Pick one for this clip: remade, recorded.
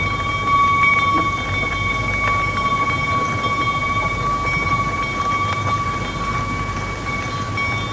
recorded